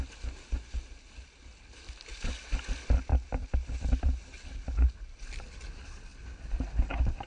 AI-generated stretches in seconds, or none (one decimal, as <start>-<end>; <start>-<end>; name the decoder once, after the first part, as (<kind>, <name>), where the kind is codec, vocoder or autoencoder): none